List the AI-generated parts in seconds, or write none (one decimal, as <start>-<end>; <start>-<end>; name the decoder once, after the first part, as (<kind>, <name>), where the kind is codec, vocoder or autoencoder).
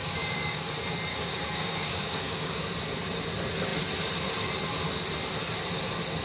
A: 0.0-0.7 (codec, DAC); 1.1-2.6